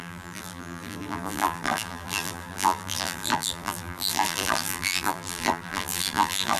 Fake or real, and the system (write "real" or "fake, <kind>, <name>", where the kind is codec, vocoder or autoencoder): fake, vocoder, BigVGAN v2